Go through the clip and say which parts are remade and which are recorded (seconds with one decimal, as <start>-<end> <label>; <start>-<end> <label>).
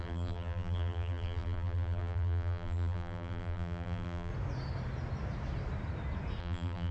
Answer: 0.0-4.3 remade; 4.3-6.4 recorded; 6.4-6.9 remade